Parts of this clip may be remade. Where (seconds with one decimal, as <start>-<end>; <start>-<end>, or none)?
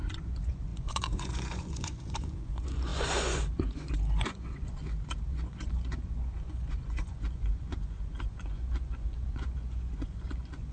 0.0-4.8; 5.3-10.7